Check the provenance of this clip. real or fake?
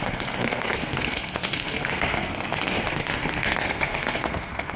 fake